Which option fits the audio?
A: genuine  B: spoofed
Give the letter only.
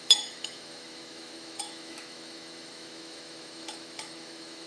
B